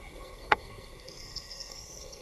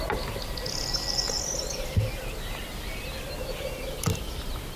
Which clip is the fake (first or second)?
first